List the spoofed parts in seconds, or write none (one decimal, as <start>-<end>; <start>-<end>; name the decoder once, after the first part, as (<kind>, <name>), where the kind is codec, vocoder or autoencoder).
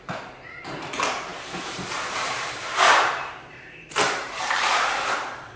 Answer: 0.0-5.6 (vocoder, BigVGAN v2)